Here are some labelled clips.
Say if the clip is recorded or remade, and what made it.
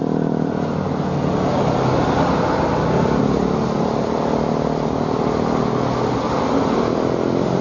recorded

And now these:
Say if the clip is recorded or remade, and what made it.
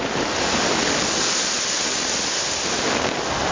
recorded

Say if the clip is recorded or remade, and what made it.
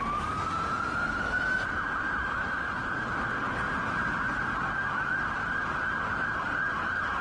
recorded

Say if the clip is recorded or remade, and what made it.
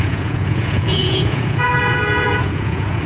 remade, vocoder, Vocos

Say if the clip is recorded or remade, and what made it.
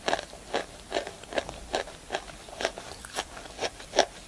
recorded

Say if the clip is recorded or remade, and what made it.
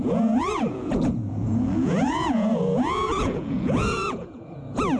remade, vocoder, Vocos